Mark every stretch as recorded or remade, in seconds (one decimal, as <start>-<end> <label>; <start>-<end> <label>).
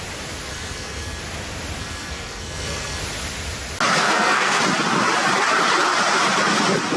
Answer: 0.0-0.5 recorded; 0.5-1.2 remade; 1.2-1.8 recorded; 1.8-3.0 remade; 3.0-4.0 recorded; 4.0-4.6 remade; 4.6-7.0 recorded